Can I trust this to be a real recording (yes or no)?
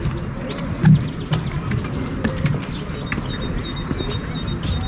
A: yes